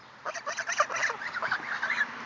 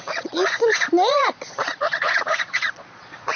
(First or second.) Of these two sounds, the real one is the first